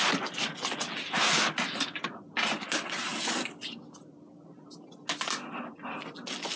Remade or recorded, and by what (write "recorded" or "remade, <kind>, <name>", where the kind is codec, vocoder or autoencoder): recorded